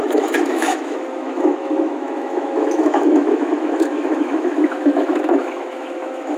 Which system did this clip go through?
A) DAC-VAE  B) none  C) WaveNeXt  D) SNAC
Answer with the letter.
A